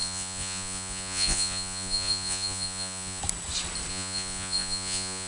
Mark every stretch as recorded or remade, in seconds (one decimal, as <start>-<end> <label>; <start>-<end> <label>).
0.0-3.2 remade; 3.2-3.9 recorded; 3.9-5.3 remade